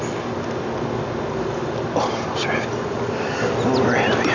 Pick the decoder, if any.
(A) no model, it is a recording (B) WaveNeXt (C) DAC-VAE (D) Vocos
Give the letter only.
A